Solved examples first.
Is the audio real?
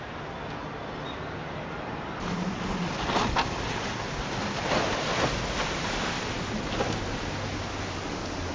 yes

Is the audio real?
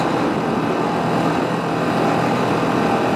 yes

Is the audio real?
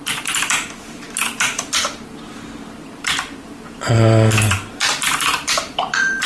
no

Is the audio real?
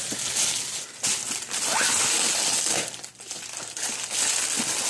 yes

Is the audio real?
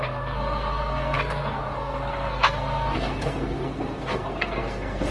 no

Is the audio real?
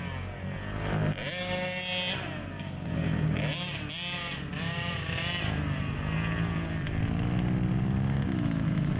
yes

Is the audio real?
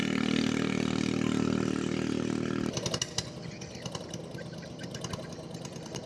yes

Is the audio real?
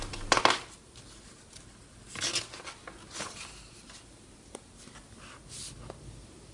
yes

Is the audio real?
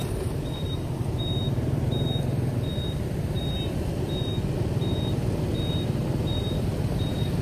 yes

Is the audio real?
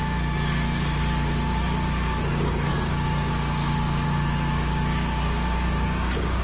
no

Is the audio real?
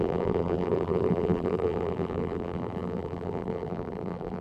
no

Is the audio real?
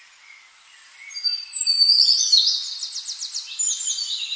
yes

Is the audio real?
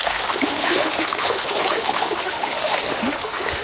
no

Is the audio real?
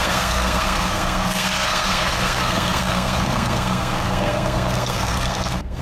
no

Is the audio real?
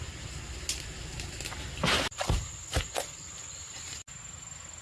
yes